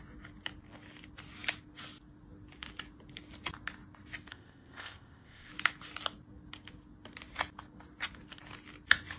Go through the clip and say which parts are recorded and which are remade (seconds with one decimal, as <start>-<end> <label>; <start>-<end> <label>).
0.0-4.3 recorded; 4.3-5.5 remade; 5.5-9.2 recorded